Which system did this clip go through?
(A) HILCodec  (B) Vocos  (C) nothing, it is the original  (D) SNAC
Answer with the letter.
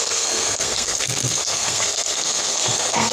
D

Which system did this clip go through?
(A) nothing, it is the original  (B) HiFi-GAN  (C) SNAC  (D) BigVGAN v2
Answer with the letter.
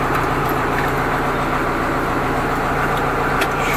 A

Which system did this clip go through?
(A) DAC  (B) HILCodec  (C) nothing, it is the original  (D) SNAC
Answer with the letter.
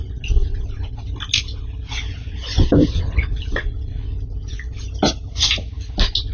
C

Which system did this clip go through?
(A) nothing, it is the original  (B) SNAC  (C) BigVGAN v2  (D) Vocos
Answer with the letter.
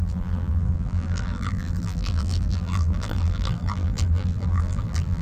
C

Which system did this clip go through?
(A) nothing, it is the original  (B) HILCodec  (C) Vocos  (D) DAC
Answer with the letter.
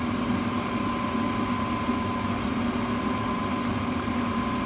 A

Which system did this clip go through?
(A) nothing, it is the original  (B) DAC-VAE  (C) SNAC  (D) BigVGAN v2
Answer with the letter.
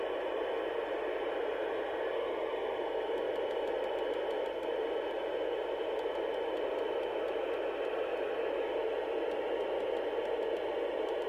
A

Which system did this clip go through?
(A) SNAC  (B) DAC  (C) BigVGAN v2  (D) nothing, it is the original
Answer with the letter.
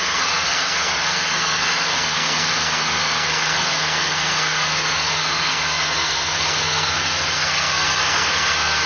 A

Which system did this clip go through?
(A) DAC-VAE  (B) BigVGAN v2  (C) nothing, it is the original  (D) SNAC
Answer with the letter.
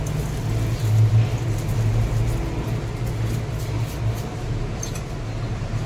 C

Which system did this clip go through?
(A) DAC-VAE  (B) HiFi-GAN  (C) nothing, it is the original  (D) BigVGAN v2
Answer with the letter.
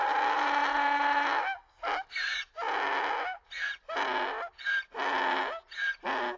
C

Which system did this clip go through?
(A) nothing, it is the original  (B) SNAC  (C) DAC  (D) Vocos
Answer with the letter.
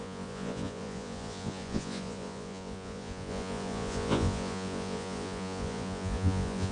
D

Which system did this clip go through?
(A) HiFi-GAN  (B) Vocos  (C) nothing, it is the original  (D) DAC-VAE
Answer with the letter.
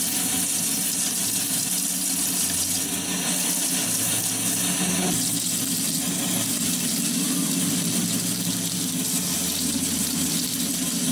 C